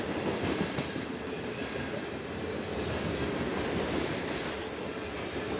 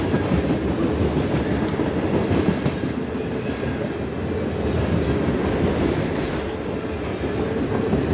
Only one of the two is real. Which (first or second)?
second